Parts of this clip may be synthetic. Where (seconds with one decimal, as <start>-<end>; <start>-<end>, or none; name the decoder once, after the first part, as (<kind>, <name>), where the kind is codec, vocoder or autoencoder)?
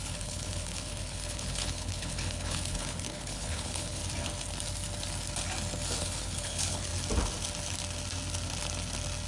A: 0.0-4.0 (codec, HILCodec); 6.0-6.9